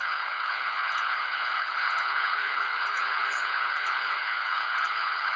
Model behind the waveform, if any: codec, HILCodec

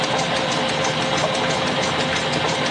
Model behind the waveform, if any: none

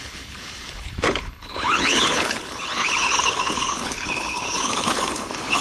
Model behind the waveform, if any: codec, HILCodec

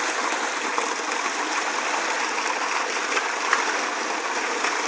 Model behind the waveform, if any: none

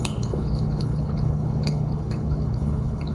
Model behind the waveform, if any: codec, HILCodec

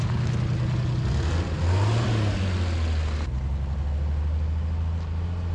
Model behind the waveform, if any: none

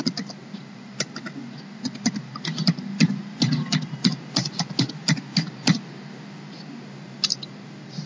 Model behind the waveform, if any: none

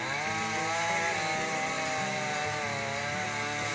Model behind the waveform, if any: none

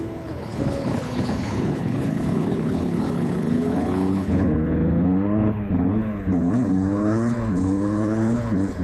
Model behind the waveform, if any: codec, HILCodec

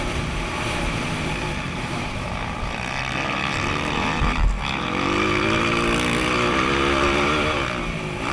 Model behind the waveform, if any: none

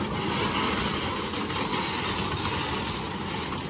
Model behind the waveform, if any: none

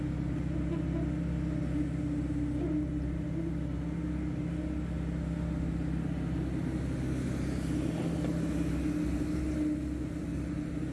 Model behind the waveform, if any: none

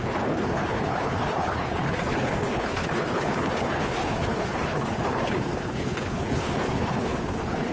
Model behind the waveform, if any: codec, HILCodec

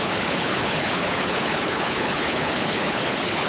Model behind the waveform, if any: codec, HILCodec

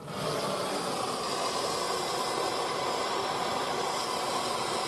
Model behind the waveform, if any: none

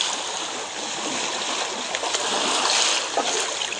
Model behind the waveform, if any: none